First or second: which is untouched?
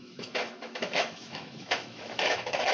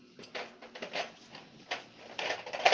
second